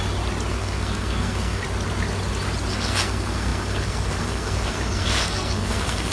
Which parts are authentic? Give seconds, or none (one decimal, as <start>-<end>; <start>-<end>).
0.0-0.5; 1.6-2.7